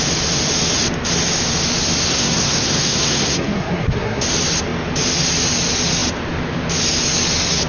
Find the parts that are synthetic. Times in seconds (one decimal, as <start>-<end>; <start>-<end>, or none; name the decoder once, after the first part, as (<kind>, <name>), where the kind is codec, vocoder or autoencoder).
2.1-4.2 (codec, SNAC)